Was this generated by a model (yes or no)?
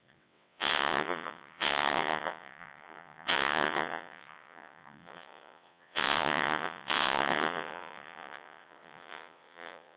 yes